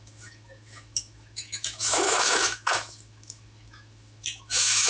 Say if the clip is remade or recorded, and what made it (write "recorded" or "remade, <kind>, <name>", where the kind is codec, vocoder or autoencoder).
remade, autoencoder, DAC-VAE